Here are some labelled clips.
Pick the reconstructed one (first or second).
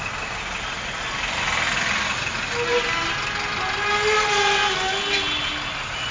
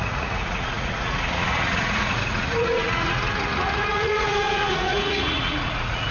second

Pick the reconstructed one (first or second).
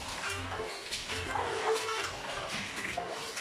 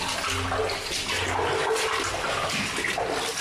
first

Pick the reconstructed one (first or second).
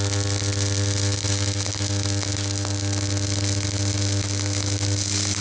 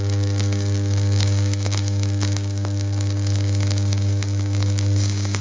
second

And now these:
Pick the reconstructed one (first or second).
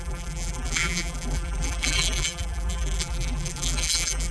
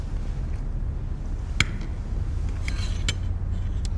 first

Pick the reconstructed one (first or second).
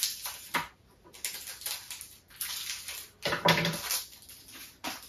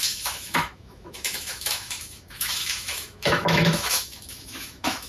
second